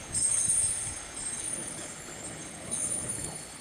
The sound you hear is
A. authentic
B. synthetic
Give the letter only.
B